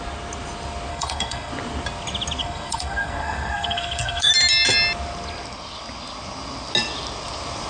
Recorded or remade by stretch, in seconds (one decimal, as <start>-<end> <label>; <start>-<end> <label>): 0.0-0.9 recorded; 0.9-1.5 remade; 1.5-2.4 recorded; 2.4-4.3 remade; 4.3-7.7 recorded